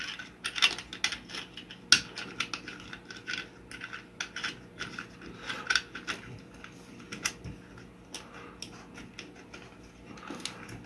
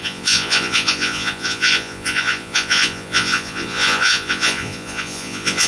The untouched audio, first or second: first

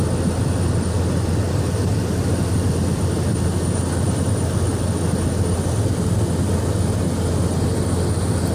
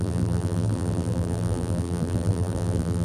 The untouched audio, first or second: first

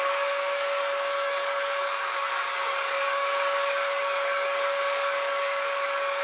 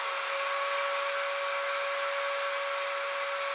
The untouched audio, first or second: second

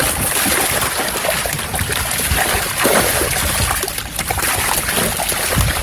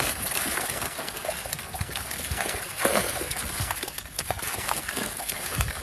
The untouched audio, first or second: first